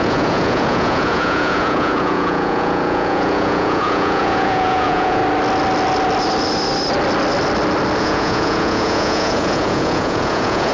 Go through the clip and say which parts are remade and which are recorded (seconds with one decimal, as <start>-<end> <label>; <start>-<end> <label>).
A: 0.0-5.2 remade; 5.2-8.0 recorded; 8.0-10.7 remade